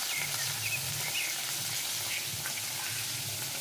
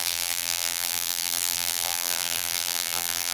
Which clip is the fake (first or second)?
second